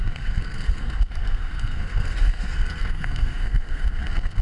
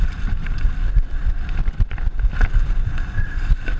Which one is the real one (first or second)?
second